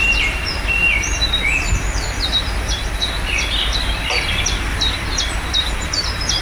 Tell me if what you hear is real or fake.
fake